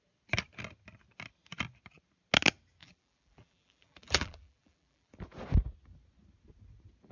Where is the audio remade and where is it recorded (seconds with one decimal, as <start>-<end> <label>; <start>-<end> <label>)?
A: 0.0-2.8 recorded; 2.8-5.1 remade; 5.1-7.1 recorded